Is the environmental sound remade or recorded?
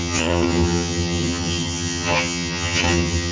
remade